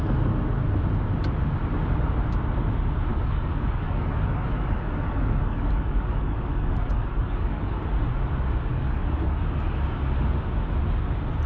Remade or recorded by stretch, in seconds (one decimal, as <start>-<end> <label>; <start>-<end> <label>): 0.0-3.1 recorded; 3.1-7.8 remade; 7.8-8.7 recorded; 8.7-9.4 remade; 9.4-11.5 recorded